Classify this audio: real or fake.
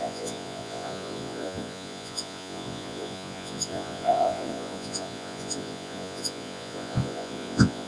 fake